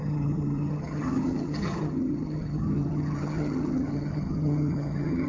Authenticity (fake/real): fake